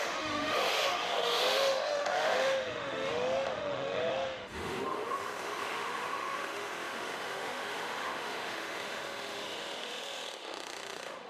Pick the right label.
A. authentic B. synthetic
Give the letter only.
B